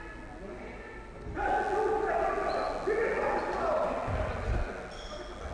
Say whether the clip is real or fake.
real